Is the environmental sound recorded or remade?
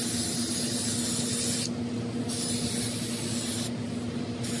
recorded